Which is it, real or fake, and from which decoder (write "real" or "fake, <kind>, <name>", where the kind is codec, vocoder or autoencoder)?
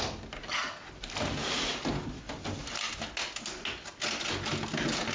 real